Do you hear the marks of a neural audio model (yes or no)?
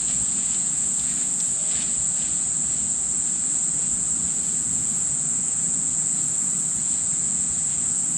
yes